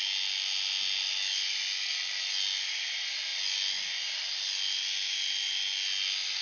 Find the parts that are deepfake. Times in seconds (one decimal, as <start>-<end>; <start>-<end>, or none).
none